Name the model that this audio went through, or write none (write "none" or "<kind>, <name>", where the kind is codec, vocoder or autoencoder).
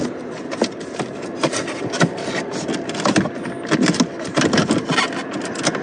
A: none